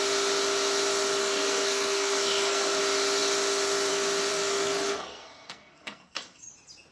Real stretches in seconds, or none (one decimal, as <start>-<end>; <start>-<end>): 0.0-1.2; 2.8-4.3; 6.5-6.9